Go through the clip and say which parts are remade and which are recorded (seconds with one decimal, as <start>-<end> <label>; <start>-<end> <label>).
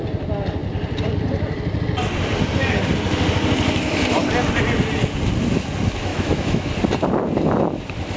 0.0-6.1 recorded; 6.1-6.7 remade; 6.7-8.2 recorded